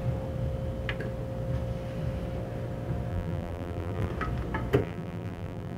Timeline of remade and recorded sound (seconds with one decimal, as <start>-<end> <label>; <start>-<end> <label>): 0.0-3.1 recorded; 3.1-4.1 remade; 4.1-4.8 recorded; 4.8-5.8 remade